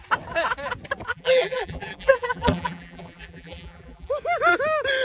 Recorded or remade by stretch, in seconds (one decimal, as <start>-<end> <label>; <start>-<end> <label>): 0.0-1.1 recorded; 1.1-4.1 remade; 4.1-5.0 recorded